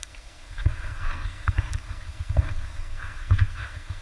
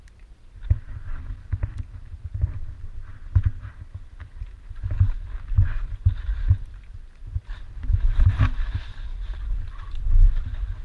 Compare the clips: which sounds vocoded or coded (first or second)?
first